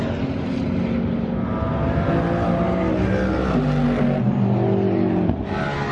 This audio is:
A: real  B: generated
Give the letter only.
A